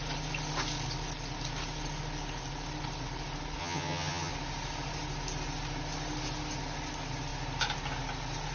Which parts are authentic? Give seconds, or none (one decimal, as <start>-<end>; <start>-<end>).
0.0-3.6; 4.3-8.5